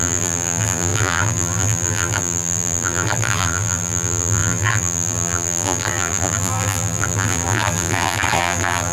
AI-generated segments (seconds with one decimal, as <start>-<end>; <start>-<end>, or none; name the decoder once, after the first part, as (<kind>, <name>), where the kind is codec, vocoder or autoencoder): 0.0-8.9 (vocoder, BigVGAN v2)

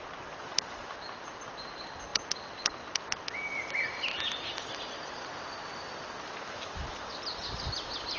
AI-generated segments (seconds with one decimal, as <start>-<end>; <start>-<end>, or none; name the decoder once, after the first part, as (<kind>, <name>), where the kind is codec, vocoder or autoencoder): none